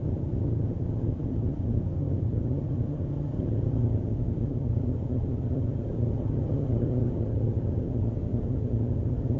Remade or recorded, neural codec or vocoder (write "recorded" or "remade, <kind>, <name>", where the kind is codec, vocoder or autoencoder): remade, vocoder, HiFi-GAN